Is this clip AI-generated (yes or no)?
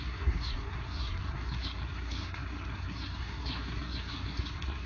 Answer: yes